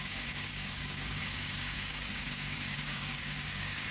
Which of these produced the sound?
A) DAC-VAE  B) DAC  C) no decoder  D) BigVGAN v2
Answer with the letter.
B